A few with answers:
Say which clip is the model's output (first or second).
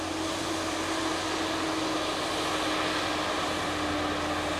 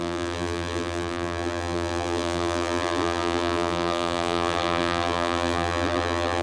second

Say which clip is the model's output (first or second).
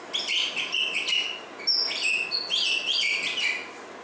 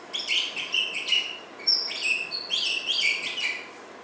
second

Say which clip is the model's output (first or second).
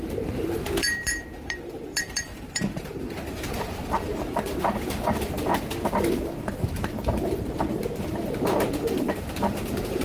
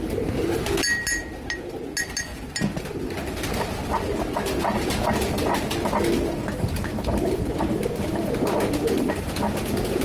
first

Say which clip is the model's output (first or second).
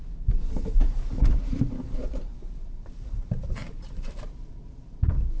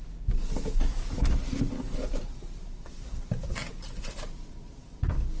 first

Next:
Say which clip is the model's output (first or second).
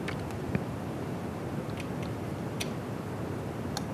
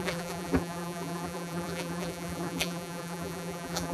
second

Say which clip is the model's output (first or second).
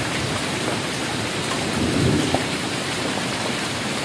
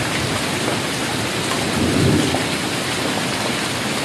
first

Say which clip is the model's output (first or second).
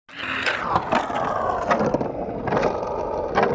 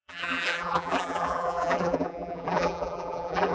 second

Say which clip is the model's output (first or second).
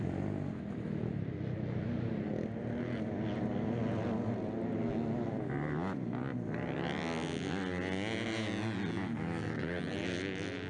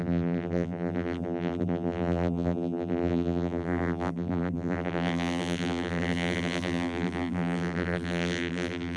second